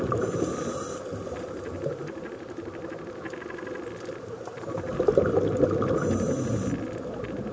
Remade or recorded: recorded